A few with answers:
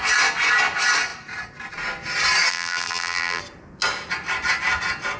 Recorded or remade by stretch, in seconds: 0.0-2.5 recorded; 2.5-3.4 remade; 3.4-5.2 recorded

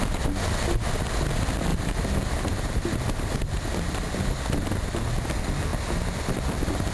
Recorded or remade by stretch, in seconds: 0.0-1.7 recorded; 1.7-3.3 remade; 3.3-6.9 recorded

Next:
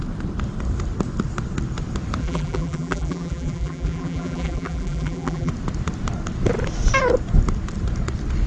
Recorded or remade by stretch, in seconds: 0.0-2.2 recorded; 2.2-5.5 remade; 5.5-8.5 recorded

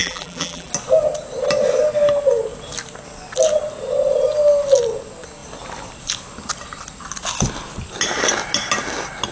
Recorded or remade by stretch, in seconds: 0.0-0.7 remade; 0.7-9.3 recorded

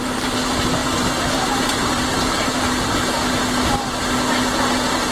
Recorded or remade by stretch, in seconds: 0.0-0.8 recorded; 0.8-2.6 remade; 2.6-5.1 recorded